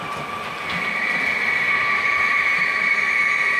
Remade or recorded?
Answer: remade